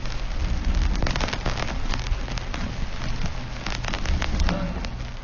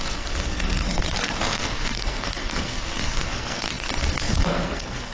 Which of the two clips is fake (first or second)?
second